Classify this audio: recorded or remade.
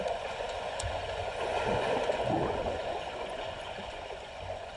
remade